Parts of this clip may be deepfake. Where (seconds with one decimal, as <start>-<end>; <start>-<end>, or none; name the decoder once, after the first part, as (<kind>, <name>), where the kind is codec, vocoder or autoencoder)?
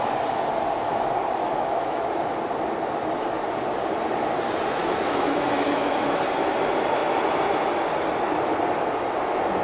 1.4-2.2 (autoencoder, DAC-VAE); 4.8-6.2